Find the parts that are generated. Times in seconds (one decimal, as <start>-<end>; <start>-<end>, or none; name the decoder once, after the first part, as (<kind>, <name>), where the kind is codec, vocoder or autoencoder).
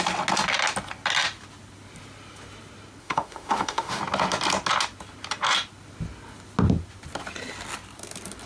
3.0-4.0 (autoencoder, DAC-VAE)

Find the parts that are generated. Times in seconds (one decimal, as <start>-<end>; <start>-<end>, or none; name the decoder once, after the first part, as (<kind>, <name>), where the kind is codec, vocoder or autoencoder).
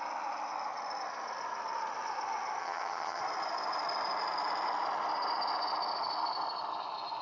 2.6-3.2 (vocoder, HiFi-GAN)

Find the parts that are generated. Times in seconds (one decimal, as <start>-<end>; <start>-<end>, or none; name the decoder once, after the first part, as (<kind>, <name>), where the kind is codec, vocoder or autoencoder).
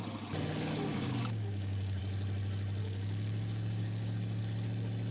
0.9-2.0 (codec, DAC); 2.8-4.4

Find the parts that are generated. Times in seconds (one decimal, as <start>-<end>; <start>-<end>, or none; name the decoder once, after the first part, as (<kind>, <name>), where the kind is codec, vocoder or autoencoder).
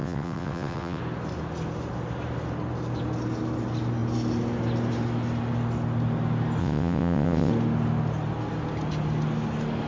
0.0-1.0 (vocoder, WaveNeXt); 6.6-7.5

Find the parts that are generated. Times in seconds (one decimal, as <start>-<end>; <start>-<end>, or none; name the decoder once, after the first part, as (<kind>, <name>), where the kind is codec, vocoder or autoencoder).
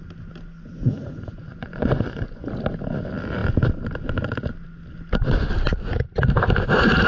0.8-2.5 (vocoder, Vocos)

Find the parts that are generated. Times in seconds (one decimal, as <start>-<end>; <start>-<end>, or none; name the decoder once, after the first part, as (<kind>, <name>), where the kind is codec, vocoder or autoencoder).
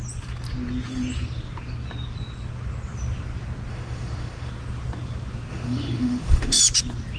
3.7-4.5 (autoencoder, DAC-VAE); 5.5-6.6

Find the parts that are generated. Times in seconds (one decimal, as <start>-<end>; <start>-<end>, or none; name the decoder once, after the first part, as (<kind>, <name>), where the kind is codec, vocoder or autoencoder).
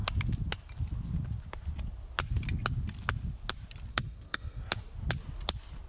3.9-4.6 (codec, SNAC)